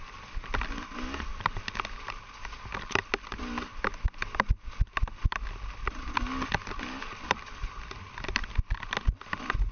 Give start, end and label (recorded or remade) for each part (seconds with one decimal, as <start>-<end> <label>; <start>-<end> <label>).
0.0-9.7 recorded